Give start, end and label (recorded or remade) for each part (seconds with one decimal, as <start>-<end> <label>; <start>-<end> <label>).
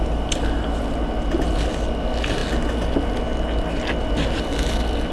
0.0-5.1 recorded